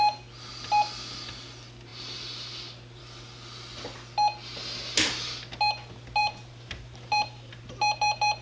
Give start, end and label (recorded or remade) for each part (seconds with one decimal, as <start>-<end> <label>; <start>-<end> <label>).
0.0-6.2 recorded; 6.2-7.6 remade; 7.6-8.4 recorded

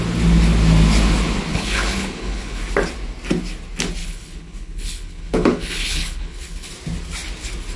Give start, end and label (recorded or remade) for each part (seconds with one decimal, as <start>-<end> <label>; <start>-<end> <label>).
0.0-1.5 recorded; 1.5-2.6 remade; 2.6-4.0 recorded; 4.0-6.7 remade; 6.7-7.8 recorded

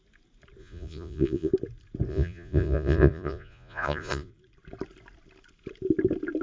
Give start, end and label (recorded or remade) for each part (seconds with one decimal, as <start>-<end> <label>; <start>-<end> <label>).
0.0-0.6 recorded; 0.6-1.5 remade; 1.5-2.1 recorded; 2.1-4.3 remade; 4.3-6.4 recorded